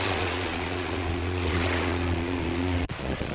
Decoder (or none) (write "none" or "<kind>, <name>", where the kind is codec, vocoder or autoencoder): vocoder, Vocos